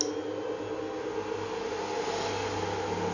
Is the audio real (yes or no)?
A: yes